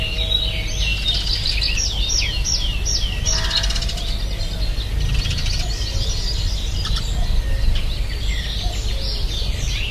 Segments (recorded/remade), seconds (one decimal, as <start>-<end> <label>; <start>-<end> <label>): 0.0-9.9 recorded